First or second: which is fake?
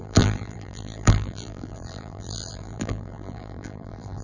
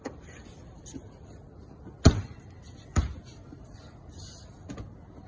first